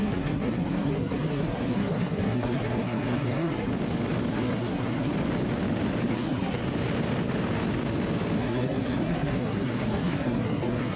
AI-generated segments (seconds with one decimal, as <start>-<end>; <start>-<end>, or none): 0.0-3.7; 4.3-5.1; 6.1-6.6; 8.4-11.0